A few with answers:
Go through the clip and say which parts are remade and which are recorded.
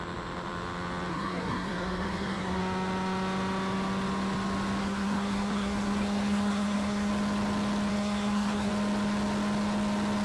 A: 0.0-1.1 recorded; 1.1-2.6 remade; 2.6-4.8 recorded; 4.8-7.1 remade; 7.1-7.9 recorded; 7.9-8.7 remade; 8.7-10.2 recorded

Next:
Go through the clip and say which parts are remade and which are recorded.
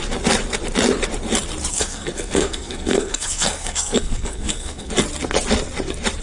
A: 0.0-1.7 recorded; 1.7-4.9 remade; 4.9-6.2 recorded